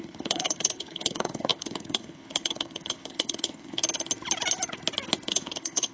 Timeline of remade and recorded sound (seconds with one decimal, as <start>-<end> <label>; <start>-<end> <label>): 0.0-3.8 remade; 3.8-5.3 recorded; 5.3-5.9 remade